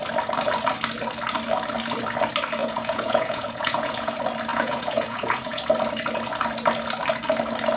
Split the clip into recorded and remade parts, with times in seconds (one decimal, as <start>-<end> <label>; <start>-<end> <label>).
0.0-2.6 recorded; 2.6-4.1 remade; 4.1-4.5 recorded; 4.5-5.6 remade; 5.6-7.8 recorded